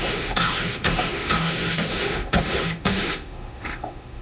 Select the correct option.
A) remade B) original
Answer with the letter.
A